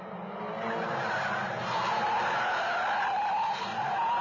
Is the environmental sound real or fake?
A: real